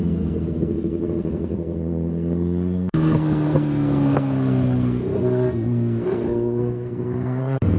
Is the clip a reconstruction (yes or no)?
yes